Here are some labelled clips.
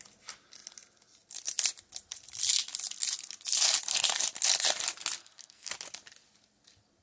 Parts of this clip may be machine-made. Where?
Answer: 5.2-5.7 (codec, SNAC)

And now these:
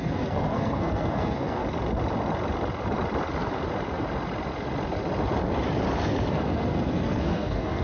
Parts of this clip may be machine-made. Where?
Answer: 0.0-1.6 (codec, SNAC); 6.3-7.8